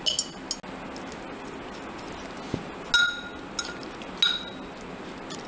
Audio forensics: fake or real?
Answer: real